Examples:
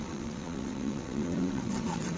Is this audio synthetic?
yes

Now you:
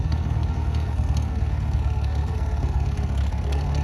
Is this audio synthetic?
yes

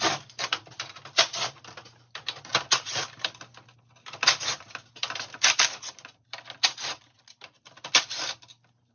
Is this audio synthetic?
no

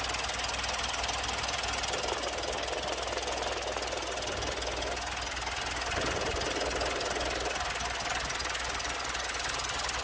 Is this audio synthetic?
no